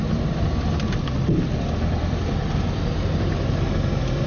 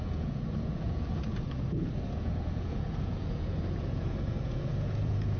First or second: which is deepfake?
second